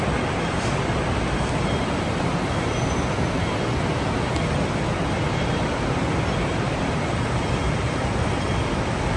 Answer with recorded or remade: recorded